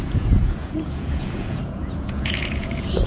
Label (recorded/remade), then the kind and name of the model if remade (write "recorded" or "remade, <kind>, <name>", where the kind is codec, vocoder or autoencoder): remade, vocoder, Vocos